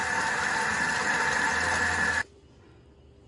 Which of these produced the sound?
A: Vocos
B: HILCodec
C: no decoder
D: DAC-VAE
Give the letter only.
C